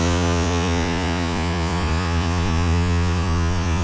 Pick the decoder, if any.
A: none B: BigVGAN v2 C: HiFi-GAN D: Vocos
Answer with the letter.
D